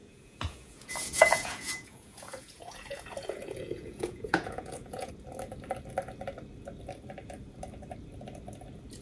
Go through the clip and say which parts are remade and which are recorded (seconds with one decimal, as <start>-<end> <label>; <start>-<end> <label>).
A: 0.0-5.1 remade; 5.1-9.0 recorded